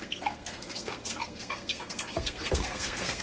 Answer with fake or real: fake